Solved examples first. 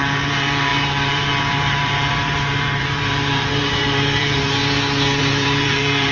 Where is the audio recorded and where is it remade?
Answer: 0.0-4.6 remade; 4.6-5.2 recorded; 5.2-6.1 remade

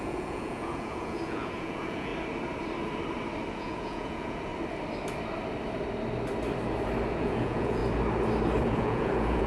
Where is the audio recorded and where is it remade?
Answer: 0.0-2.1 remade; 2.1-3.5 recorded; 3.5-4.5 remade; 4.5-7.1 recorded; 7.1-7.8 remade; 7.8-8.6 recorded; 8.6-9.5 remade

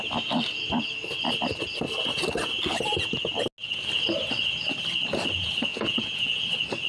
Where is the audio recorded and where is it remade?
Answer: 0.0-5.7 recorded; 5.7-6.5 remade; 6.5-6.9 recorded